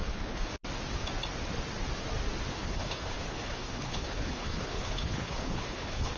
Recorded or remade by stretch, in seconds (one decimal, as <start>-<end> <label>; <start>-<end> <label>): 0.0-0.5 remade; 0.5-2.5 recorded; 2.5-6.2 remade